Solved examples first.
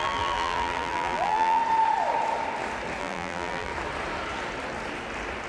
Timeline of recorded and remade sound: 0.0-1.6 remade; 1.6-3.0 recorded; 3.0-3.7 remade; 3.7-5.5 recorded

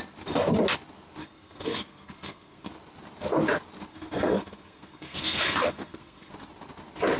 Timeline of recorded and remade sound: 0.0-1.2 recorded; 1.2-2.7 remade; 2.7-3.9 recorded; 3.9-6.3 remade; 6.3-7.2 recorded

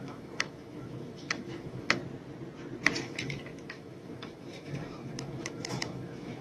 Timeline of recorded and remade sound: 0.0-2.0 remade; 2.0-3.0 recorded; 3.0-6.4 remade

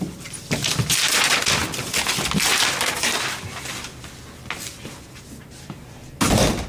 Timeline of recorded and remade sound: 0.0-6.7 recorded

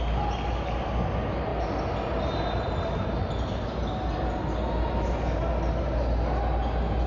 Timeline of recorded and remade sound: 0.0-7.1 recorded

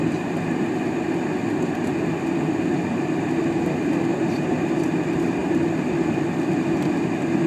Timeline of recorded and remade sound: 0.0-4.1 recorded; 4.1-4.7 remade; 4.7-5.4 recorded; 5.4-5.9 remade; 5.9-7.5 recorded

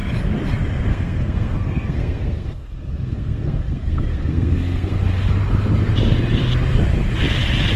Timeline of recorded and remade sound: 0.0-0.9 recorded; 0.9-5.0 remade; 5.0-7.8 recorded

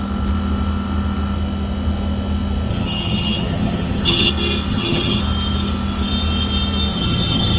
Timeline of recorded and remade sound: 0.0-2.7 recorded; 2.7-4.3 remade; 4.3-4.7 recorded; 4.7-5.2 remade; 5.2-6.9 recorded; 6.9-7.6 remade